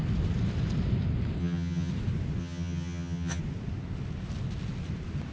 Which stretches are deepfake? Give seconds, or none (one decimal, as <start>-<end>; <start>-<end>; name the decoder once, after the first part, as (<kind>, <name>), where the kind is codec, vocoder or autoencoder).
1.4-1.9 (vocoder, HiFi-GAN); 2.4-3.4

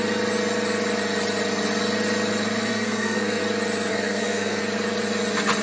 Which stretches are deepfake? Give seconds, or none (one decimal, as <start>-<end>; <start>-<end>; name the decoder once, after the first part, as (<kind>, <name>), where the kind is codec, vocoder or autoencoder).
2.7-3.4 (codec, SNAC); 3.9-4.6

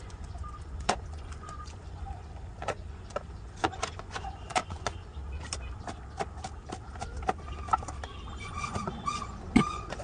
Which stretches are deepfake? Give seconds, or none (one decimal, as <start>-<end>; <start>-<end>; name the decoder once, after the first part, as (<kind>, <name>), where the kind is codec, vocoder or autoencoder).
0.0-5.2 (vocoder, Vocos); 8.4-10.0

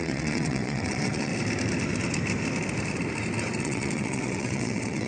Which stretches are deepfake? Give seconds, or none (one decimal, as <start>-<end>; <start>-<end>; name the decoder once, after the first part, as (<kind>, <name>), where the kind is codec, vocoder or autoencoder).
0.0-1.3 (vocoder, WaveNeXt); 3.6-5.1

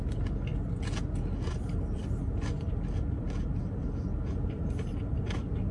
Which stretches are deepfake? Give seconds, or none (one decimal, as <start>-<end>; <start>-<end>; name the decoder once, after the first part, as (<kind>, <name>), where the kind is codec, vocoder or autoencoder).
none

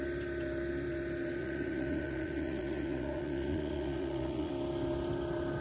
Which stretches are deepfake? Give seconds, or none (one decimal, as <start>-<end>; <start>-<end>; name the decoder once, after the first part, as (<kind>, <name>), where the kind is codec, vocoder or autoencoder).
1.4-4.5 (vocoder, Vocos)